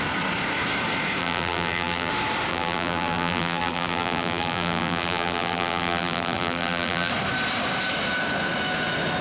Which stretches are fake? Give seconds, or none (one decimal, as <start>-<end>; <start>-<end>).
1.2-2.1; 2.5-7.1